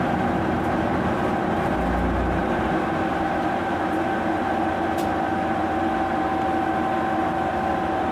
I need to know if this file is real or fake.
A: real